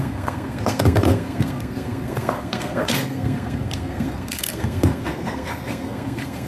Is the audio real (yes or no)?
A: no